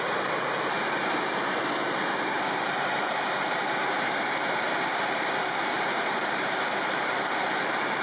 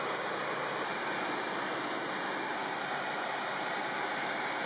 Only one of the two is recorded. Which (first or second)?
second